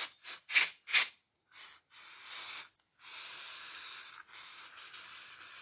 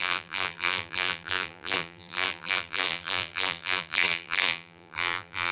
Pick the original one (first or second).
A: first